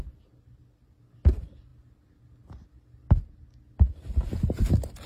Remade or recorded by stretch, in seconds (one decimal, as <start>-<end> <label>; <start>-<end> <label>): 0.0-5.1 recorded